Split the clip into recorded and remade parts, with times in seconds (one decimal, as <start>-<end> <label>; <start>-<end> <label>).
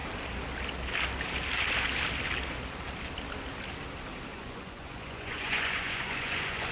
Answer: 0.0-4.3 recorded; 4.3-6.7 remade